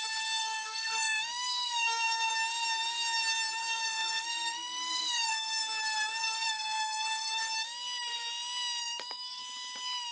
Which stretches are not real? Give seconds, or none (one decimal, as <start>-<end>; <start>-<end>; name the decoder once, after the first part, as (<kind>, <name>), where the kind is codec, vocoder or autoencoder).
0.4-2.3 (codec, SNAC); 3.6-5.6; 6.2-7.4; 8.8-9.4

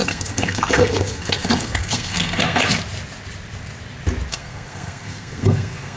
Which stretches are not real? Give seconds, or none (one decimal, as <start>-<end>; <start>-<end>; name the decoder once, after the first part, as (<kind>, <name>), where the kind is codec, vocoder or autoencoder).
0.0-2.7 (codec, SNAC); 4.3-6.0

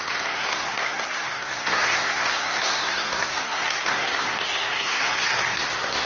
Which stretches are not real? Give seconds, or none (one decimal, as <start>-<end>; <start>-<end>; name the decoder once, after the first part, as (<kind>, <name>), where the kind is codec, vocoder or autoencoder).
0.0-6.1 (codec, SNAC)

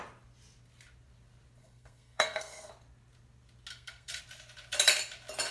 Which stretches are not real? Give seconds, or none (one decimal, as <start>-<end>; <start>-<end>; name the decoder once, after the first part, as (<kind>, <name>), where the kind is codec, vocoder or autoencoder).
1.6-2.7 (codec, SNAC); 3.7-4.2

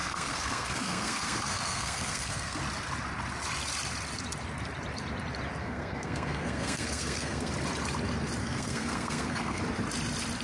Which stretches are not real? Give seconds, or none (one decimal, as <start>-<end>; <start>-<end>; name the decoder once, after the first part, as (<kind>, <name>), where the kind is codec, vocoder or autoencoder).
0.0-2.6 (codec, SNAC); 5.6-7.5; 8.4-9.6

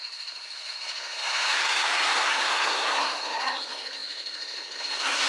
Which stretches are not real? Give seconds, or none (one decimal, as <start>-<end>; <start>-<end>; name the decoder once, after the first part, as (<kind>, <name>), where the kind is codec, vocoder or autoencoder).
0.0-5.3 (codec, SNAC)

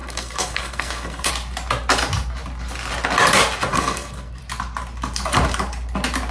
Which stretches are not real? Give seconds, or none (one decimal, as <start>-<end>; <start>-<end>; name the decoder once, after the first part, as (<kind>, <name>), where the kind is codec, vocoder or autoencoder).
0.0-1.3 (codec, SNAC); 3.7-4.4

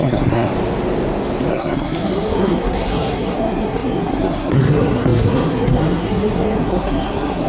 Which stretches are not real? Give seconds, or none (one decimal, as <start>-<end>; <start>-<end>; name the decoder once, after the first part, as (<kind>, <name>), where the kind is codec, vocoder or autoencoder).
0.0-0.5 (codec, SNAC); 1.5-7.5